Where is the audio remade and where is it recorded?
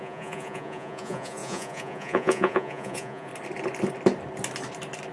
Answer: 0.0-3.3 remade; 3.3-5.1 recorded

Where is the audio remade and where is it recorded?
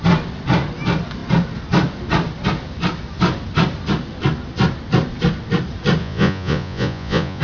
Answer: 0.0-6.0 recorded; 6.0-7.4 remade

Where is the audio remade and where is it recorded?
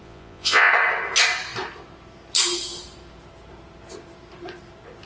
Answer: 0.0-0.7 remade; 0.7-5.1 recorded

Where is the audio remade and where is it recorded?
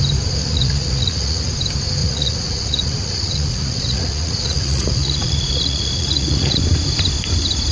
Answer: 0.0-0.4 recorded; 0.4-1.5 remade; 1.5-2.0 recorded; 2.0-6.6 remade; 6.6-7.7 recorded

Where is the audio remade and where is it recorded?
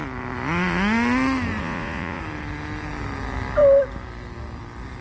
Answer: 0.0-1.6 recorded; 1.6-2.2 remade; 2.2-5.0 recorded